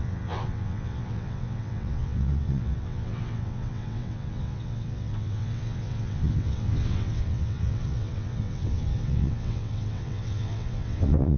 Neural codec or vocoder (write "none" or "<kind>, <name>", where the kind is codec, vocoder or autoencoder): vocoder, WaveNeXt